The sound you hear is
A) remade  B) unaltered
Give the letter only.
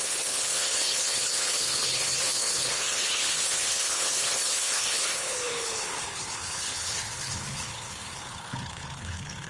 A